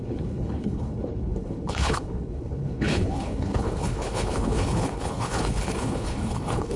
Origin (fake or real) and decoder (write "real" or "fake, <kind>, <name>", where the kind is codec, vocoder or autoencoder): fake, codec, HILCodec